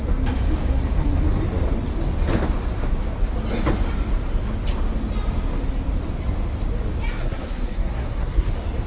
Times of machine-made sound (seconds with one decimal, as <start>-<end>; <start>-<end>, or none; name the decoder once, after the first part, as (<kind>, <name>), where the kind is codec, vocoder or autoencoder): 7.2-8.5 (codec, SNAC)